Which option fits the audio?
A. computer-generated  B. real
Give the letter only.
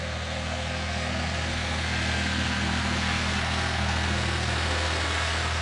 A